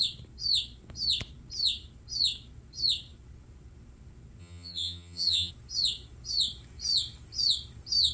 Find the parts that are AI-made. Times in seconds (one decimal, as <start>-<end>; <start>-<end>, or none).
4.4-5.5